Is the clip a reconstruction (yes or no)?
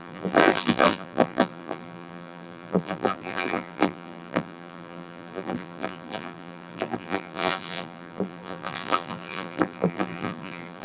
yes